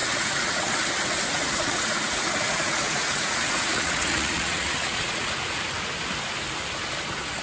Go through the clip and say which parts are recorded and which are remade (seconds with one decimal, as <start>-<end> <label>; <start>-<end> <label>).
0.0-0.7 remade; 0.7-1.3 recorded; 1.3-5.7 remade; 5.7-7.4 recorded